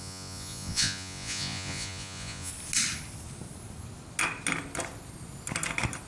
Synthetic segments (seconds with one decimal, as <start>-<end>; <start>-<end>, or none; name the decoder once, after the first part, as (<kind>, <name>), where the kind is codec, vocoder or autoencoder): 0.0-2.5 (vocoder, Vocos)

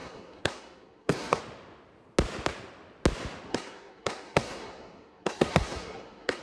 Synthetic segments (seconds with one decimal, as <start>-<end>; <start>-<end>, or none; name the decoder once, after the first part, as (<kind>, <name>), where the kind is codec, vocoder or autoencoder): 0.0-1.4 (codec, SNAC); 3.5-6.4